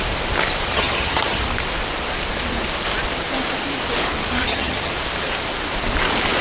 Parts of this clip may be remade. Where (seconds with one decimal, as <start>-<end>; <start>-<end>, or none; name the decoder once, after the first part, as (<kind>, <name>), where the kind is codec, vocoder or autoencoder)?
0.7-1.4 (vocoder, HiFi-GAN); 4.4-4.9